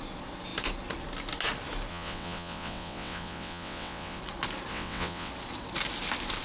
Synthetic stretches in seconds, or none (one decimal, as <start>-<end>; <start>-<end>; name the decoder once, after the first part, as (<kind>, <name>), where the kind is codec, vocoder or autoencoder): 1.9-4.2 (vocoder, WaveNeXt); 4.7-5.3